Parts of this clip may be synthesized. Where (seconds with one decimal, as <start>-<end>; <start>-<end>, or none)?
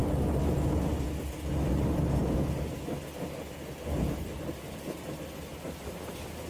none